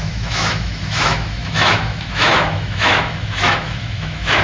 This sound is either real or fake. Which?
fake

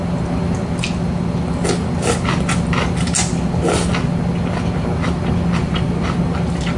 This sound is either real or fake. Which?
real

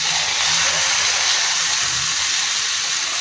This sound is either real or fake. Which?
real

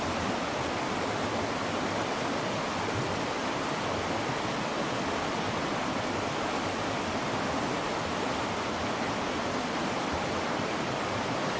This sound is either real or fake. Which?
real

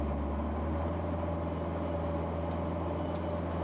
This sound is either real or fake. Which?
real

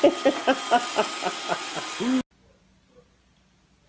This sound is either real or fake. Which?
real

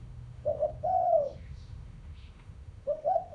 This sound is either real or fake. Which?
fake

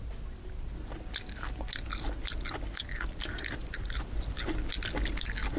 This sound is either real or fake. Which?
real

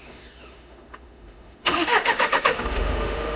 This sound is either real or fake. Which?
fake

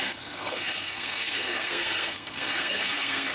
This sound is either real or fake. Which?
fake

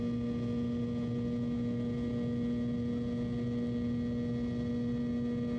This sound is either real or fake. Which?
real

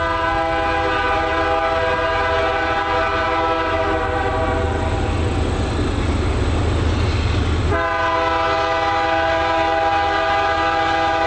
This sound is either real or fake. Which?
real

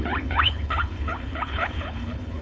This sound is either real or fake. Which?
fake